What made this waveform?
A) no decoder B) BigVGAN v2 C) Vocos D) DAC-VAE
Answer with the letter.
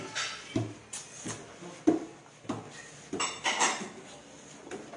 A